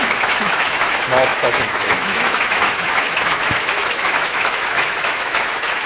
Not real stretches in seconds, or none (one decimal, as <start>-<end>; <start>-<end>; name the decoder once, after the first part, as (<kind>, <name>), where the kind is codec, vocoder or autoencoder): 0.0-5.9 (autoencoder, DAC-VAE)